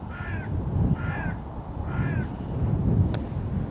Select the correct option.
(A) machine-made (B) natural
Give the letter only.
B